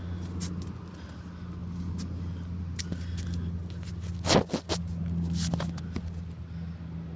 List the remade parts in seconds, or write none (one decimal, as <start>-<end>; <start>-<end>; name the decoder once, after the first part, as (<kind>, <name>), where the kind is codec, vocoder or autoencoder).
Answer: none